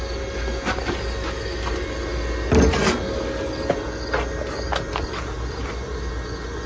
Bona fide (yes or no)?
yes